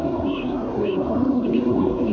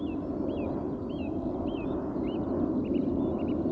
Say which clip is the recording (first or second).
second